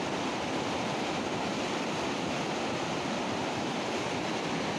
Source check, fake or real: real